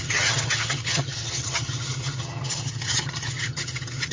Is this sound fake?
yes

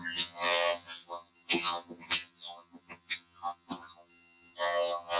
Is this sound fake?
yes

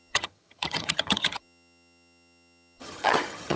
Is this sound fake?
yes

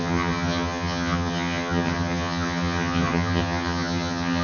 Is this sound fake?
yes